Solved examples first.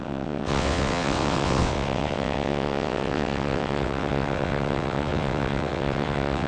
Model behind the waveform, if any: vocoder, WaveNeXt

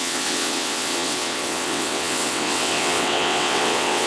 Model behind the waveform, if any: vocoder, WaveNeXt